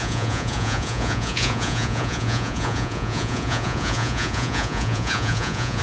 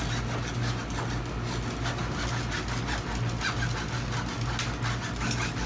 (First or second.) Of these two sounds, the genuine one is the second